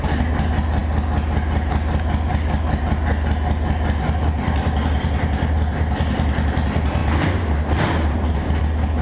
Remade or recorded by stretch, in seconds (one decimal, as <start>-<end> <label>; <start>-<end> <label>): 0.0-2.3 recorded; 2.3-2.8 remade; 2.8-9.0 recorded